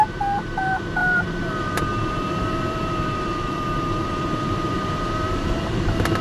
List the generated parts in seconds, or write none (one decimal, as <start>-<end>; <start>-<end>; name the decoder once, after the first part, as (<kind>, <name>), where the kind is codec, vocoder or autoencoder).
0.0-6.2 (vocoder, BigVGAN v2)

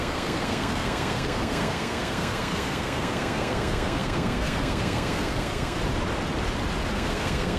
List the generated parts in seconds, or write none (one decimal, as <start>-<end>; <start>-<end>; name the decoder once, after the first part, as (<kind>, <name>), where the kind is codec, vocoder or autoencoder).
0.0-5.8 (codec, SNAC); 6.9-7.6

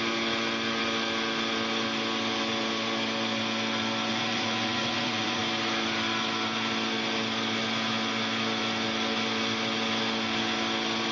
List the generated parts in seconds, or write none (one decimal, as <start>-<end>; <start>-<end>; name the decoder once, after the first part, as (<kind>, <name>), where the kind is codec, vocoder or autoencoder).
4.1-5.4 (vocoder, Vocos)